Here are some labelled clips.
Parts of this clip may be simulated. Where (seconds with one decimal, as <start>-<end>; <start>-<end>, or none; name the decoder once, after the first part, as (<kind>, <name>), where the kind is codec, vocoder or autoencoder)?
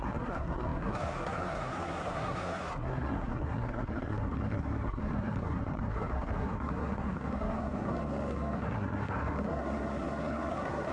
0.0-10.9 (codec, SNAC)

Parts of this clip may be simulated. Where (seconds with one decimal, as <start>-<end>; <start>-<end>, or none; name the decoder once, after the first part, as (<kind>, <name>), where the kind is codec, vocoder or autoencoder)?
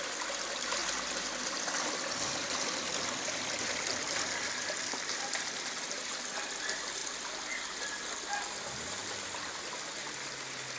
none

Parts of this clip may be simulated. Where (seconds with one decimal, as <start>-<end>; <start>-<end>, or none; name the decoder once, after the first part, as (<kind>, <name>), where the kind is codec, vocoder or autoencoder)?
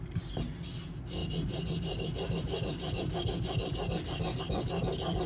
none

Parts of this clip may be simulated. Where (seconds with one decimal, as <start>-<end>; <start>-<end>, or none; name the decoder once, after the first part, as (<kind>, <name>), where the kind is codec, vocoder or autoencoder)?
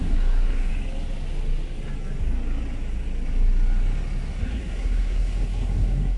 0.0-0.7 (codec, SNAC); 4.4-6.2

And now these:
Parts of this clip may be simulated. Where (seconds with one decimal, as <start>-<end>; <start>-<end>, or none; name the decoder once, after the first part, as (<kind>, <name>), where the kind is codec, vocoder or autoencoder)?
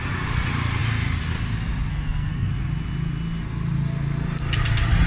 1.9-2.5 (codec, SNAC)